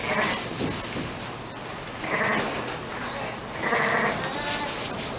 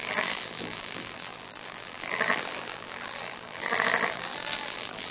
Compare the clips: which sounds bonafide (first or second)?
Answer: first